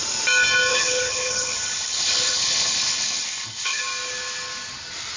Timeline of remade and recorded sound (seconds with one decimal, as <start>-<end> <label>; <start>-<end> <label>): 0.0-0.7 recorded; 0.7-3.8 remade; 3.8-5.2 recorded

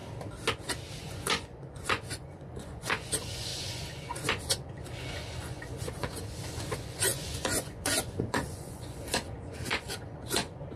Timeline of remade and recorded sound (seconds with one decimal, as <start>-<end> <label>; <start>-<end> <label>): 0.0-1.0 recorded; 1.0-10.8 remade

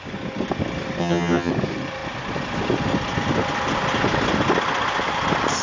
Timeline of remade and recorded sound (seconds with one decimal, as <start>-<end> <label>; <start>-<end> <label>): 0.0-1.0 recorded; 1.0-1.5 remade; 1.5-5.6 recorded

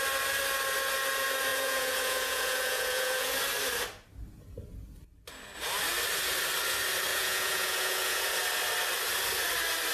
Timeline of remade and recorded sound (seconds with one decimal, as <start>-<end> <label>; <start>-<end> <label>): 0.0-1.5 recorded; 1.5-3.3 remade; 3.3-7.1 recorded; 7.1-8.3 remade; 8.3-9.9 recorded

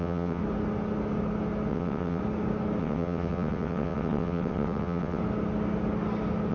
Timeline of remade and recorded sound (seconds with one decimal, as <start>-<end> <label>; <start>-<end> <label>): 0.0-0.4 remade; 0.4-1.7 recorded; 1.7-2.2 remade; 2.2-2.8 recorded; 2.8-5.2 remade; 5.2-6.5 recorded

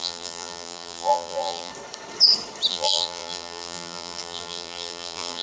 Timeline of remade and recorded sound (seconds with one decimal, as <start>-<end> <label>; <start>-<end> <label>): 0.0-1.7 remade; 1.7-2.7 recorded; 2.7-5.4 remade

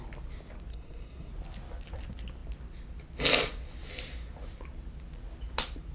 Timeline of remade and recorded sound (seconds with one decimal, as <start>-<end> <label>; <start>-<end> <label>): 0.0-0.7 recorded; 0.7-1.3 remade; 1.3-5.9 recorded